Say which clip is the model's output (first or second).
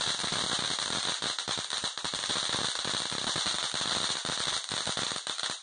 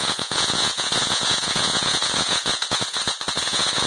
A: second